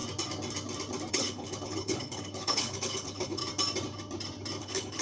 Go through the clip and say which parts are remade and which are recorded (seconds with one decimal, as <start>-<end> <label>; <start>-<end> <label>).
0.0-1.1 recorded; 1.1-3.4 remade; 3.4-4.6 recorded; 4.6-5.0 remade